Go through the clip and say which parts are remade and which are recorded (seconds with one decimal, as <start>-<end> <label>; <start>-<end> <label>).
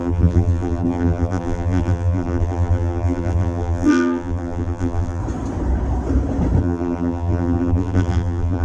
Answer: 0.0-5.2 remade; 5.2-6.6 recorded; 6.6-8.6 remade